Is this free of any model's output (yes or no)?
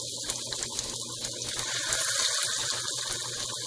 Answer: yes